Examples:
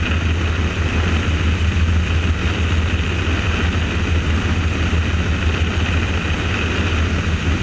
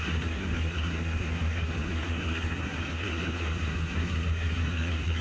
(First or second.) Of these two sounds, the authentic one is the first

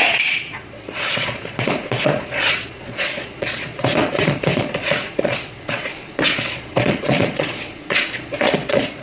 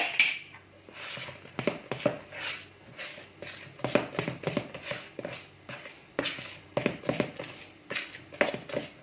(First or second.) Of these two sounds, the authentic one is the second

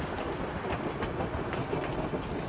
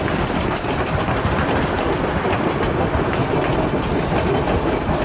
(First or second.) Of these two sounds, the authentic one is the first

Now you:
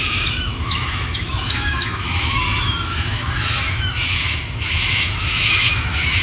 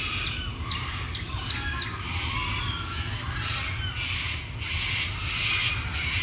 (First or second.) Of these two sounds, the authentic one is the second